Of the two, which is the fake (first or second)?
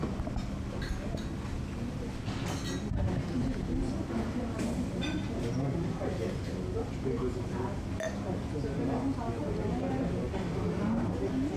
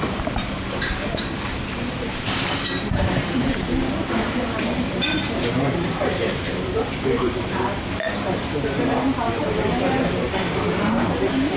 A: second